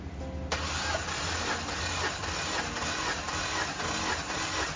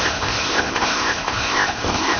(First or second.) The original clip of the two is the first